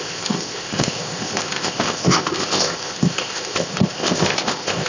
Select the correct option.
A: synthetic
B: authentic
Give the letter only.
A